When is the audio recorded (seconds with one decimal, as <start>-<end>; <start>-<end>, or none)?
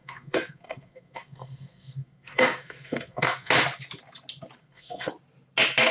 3.5-4.6; 5.1-5.9